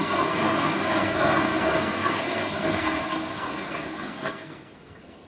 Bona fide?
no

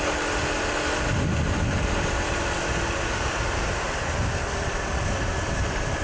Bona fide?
yes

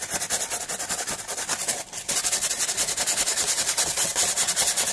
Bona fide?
yes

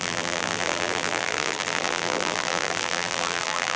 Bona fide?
no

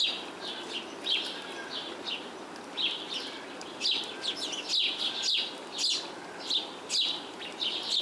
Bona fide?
yes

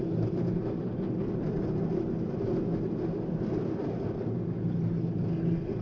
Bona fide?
yes